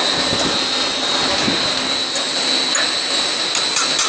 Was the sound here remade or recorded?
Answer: recorded